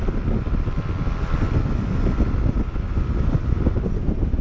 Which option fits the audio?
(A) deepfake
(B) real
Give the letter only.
B